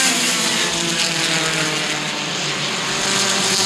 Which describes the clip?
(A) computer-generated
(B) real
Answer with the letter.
A